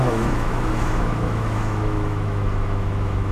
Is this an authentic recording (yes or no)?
no